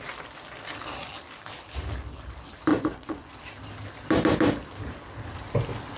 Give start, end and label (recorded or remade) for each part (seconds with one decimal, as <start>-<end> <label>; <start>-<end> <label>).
0.0-2.7 recorded; 2.7-3.3 remade; 3.3-6.0 recorded